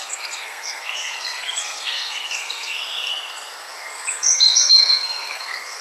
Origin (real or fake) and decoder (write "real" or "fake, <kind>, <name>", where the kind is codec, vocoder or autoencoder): fake, codec, SNAC